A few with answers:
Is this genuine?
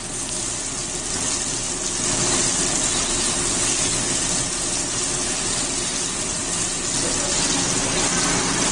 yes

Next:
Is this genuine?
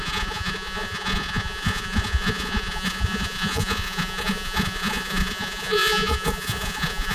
no